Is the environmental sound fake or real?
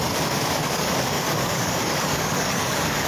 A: fake